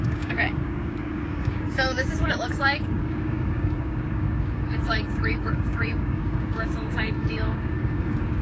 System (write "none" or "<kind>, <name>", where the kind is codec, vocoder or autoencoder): codec, DAC